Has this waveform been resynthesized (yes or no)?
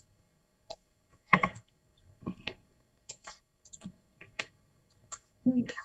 yes